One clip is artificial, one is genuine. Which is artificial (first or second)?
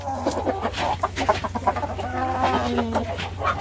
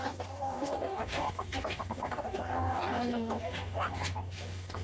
second